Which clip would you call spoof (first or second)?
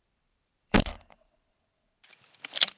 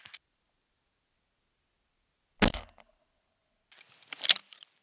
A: first